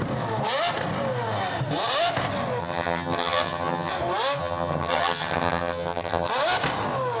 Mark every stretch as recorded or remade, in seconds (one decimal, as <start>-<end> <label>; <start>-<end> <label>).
0.0-2.6 recorded; 2.6-3.9 remade; 3.9-4.4 recorded; 4.4-6.3 remade; 6.3-7.2 recorded